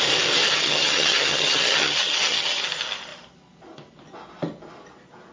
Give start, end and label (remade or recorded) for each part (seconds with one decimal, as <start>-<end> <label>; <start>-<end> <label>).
0.0-0.5 recorded; 0.5-2.6 remade; 2.6-5.3 recorded